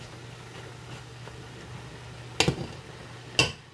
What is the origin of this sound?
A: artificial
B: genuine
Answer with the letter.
B